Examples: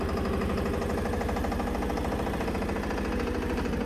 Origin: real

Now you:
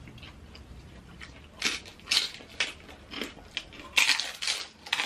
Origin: real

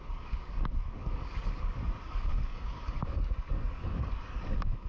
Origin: fake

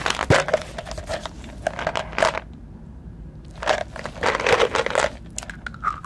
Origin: real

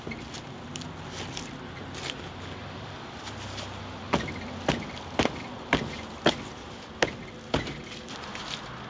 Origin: real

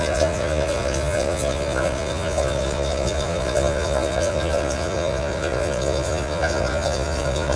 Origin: fake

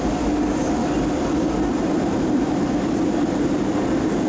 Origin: real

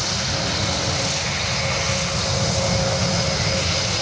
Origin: real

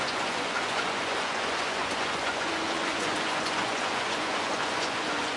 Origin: fake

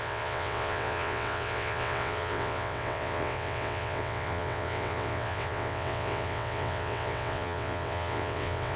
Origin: fake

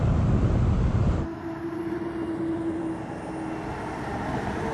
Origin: real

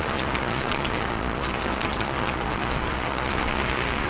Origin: fake